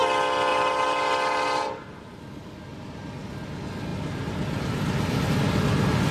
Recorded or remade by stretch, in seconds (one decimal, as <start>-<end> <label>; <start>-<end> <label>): 0.0-0.5 recorded; 0.5-2.0 remade; 2.0-6.1 recorded